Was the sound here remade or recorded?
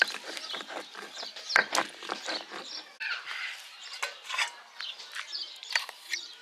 recorded